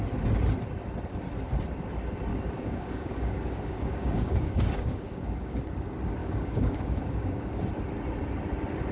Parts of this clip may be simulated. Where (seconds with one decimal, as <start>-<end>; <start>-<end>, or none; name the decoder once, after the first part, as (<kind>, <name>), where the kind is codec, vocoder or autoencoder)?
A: 2.3-5.6 (codec, DAC); 6.2-7.6

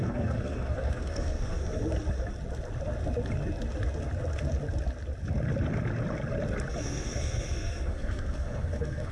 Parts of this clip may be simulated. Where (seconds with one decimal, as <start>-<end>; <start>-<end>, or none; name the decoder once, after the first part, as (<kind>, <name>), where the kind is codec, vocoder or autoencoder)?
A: 0.0-1.6 (codec, SNAC); 6.8-9.1

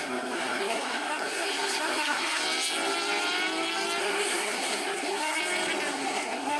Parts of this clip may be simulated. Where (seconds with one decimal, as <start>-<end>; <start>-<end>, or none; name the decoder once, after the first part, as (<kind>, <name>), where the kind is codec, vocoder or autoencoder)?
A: 0.0-2.4 (codec, SNAC); 4.0-5.4; 5.9-6.6

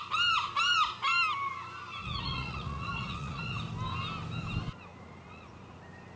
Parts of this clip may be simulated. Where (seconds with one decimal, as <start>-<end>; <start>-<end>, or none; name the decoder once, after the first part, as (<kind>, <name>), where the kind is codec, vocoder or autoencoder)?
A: 2.0-3.6 (vocoder, Vocos); 4.9-5.8

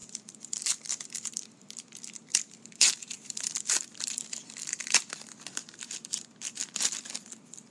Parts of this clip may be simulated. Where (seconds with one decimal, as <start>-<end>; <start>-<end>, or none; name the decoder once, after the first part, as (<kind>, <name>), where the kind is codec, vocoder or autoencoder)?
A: 0.0-1.1 (vocoder, BigVGAN v2); 2.3-4.8; 6.6-7.7